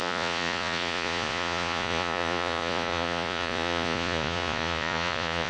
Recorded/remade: remade